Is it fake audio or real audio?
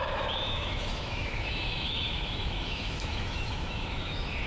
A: fake